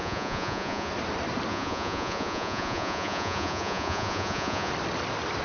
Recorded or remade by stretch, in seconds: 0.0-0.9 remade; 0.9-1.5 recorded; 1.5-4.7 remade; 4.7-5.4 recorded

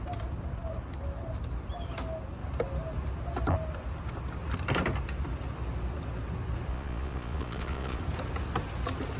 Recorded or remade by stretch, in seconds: 0.0-6.7 recorded; 6.7-8.0 remade; 8.0-9.2 recorded

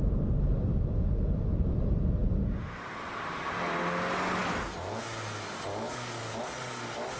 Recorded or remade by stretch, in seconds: 0.0-5.7 recorded; 5.7-6.4 remade; 6.4-7.2 recorded

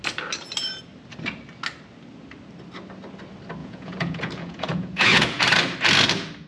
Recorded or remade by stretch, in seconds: 0.0-3.6 recorded; 3.6-5.4 remade; 5.4-6.5 recorded

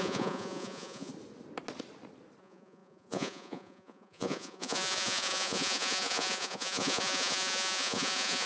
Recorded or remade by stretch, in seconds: 0.0-1.1 remade; 1.1-2.4 recorded; 2.4-8.5 remade

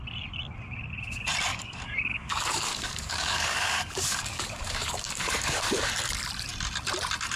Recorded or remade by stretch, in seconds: 0.0-1.5 recorded; 1.5-5.9 remade; 5.9-7.4 recorded

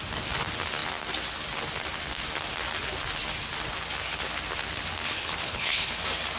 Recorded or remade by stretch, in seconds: 0.0-5.1 recorded; 5.1-6.0 remade; 6.0-6.4 recorded

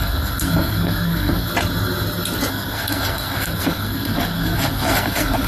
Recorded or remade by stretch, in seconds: 0.0-1.5 remade; 1.5-2.5 recorded; 2.5-5.5 remade